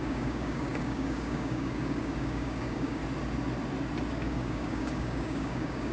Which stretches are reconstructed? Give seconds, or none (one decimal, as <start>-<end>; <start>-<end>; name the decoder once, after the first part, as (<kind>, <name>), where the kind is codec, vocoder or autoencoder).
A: 0.0-3.0 (codec, DAC); 4.1-5.9